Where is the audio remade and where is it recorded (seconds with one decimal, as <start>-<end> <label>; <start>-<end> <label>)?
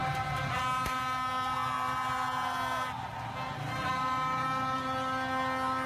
0.0-5.9 recorded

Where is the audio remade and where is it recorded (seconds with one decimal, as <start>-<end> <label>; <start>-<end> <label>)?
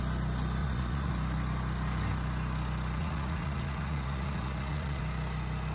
0.0-0.6 recorded; 0.6-1.1 remade; 1.1-3.0 recorded; 3.0-5.0 remade; 5.0-5.7 recorded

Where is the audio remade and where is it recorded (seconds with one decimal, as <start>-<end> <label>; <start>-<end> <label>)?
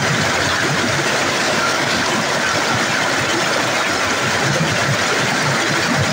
0.0-1.2 recorded; 1.2-2.1 remade; 2.1-6.1 recorded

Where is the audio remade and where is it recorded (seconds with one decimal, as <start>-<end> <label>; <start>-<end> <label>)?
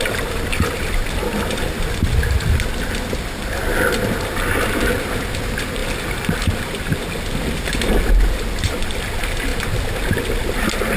0.0-11.0 recorded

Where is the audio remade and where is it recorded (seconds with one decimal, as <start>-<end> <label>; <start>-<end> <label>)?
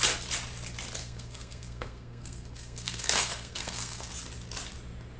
0.0-1.0 recorded; 1.0-4.1 remade; 4.1-5.2 recorded